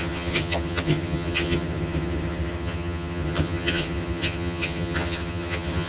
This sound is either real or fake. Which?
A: fake